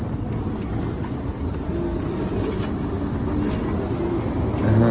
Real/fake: real